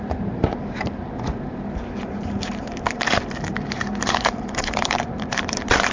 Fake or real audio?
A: fake